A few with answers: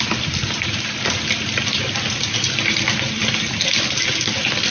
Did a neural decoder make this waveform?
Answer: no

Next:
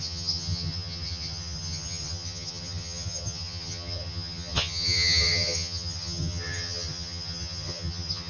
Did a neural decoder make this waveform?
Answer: yes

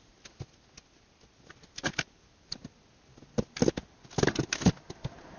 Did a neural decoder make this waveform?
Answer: no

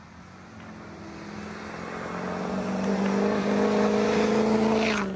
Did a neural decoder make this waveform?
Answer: no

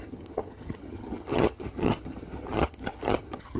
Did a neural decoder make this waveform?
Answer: yes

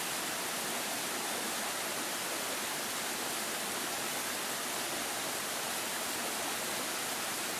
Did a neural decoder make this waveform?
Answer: no